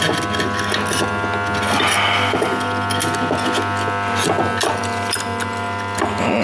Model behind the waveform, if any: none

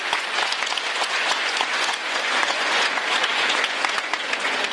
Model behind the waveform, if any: vocoder, Vocos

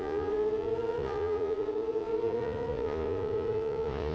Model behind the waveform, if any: vocoder, Vocos